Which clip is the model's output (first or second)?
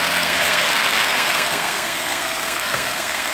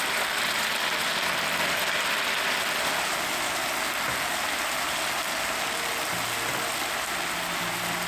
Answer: first